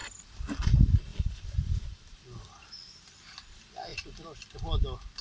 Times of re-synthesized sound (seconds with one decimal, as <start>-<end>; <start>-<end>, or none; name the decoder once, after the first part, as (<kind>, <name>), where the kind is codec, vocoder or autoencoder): 0.0-0.7 (vocoder, BigVGAN v2); 1.1-2.6; 3.9-4.6